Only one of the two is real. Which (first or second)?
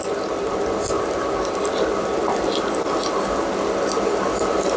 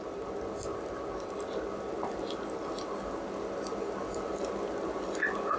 second